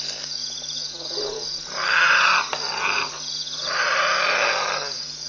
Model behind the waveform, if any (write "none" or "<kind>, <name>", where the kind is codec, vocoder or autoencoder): none